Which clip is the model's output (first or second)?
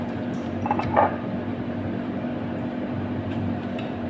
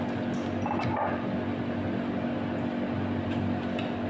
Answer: first